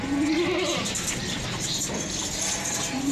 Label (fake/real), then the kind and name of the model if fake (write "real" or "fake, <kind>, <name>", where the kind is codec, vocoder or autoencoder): real